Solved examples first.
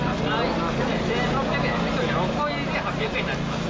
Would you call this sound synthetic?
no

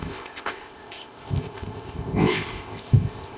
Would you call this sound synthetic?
yes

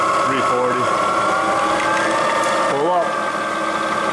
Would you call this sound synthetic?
no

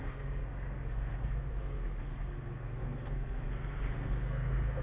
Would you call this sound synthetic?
yes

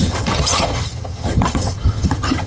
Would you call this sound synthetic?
yes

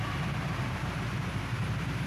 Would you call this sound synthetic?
yes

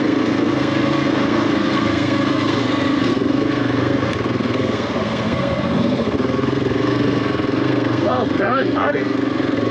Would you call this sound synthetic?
yes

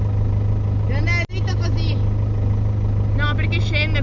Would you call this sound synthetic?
no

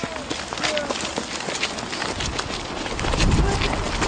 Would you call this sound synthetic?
no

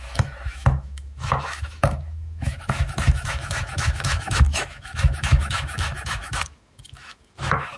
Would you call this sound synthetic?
yes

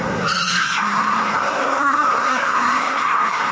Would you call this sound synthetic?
yes